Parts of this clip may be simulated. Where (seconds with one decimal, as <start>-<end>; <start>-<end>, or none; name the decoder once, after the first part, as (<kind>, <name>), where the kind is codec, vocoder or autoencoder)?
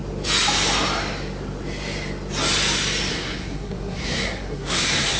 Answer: 3.1-5.2 (codec, SNAC)